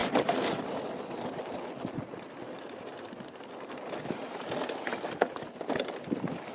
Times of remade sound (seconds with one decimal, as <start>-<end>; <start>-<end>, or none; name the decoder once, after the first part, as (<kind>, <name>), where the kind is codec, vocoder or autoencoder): none